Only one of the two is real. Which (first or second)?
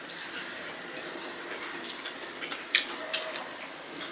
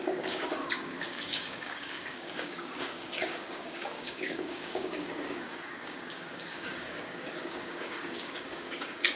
first